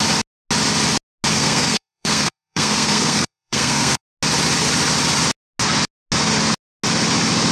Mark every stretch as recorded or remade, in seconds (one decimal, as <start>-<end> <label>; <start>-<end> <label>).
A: 0.0-1.3 recorded; 1.3-4.0 remade; 4.0-7.5 recorded